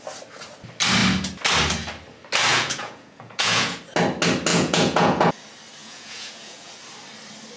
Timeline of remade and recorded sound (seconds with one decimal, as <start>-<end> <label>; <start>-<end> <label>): 0.0-2.5 recorded; 2.5-3.8 remade; 3.8-4.5 recorded; 4.5-5.3 remade; 5.3-5.8 recorded; 5.8-6.7 remade; 6.7-7.6 recorded

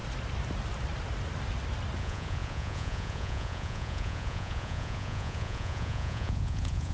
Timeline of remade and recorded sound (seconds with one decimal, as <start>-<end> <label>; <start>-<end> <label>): 0.0-2.0 recorded; 2.0-6.9 remade

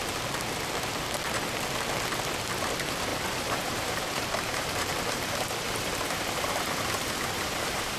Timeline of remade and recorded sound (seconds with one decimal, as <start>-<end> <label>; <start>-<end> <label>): 0.0-3.1 recorded; 3.1-8.0 remade